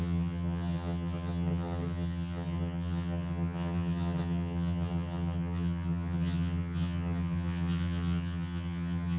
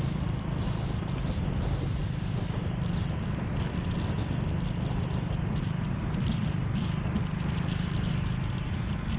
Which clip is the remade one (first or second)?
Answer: first